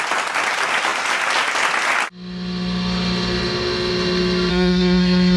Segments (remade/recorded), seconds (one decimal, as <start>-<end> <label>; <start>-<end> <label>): 0.0-4.5 recorded; 4.5-5.4 remade